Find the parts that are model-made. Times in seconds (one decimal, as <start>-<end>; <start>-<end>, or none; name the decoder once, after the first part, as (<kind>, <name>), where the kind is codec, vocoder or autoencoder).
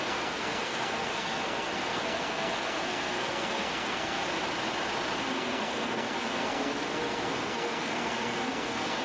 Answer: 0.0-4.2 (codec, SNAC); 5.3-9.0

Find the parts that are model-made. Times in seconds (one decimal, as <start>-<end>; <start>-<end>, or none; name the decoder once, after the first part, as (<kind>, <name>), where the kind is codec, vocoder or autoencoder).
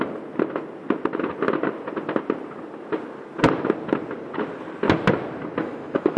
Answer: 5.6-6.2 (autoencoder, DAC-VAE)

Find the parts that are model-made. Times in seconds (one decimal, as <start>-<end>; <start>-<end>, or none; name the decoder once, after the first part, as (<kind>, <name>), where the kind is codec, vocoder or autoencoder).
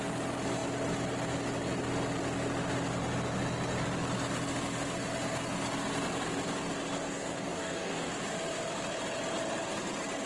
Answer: 7.1-8.1 (codec, DAC)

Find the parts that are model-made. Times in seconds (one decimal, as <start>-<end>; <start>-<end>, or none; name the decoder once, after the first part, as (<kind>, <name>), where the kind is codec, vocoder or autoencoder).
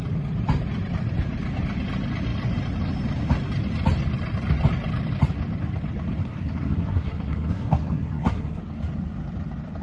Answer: 6.2-8.6 (codec, SNAC)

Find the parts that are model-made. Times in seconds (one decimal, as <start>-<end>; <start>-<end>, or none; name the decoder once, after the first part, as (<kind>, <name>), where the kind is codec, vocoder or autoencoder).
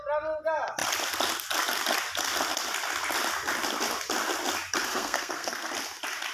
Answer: 4.9-5.7 (codec, SNAC)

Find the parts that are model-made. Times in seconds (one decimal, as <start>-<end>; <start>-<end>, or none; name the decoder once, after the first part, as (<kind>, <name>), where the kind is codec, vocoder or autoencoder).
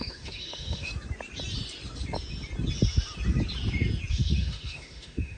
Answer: 0.0-0.9 (autoencoder, DAC-VAE); 4.1-5.4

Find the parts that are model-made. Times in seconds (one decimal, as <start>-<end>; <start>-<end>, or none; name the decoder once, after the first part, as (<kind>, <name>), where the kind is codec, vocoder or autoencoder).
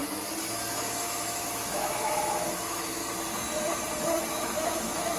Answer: 0.7-3.0 (autoencoder, DAC-VAE); 4.3-5.2